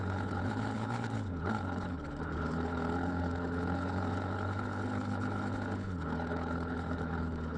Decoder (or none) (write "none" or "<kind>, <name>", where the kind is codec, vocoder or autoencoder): codec, HILCodec